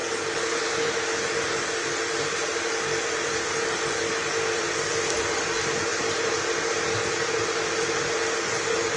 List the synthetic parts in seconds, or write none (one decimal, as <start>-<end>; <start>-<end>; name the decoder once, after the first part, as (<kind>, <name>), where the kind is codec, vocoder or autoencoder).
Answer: none